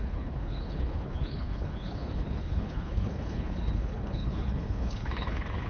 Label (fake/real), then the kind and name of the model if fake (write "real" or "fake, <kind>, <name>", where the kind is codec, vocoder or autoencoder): fake, codec, HILCodec